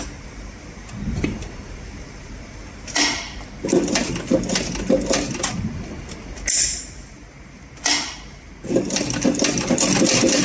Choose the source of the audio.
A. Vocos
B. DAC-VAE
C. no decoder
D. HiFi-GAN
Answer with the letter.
C